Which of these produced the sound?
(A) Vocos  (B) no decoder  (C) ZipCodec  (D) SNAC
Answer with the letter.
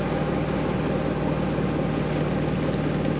B